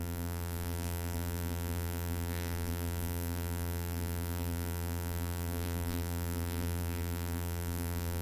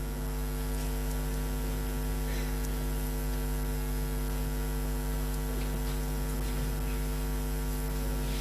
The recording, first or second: second